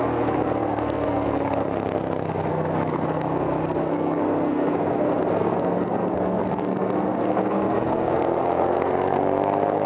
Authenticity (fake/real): fake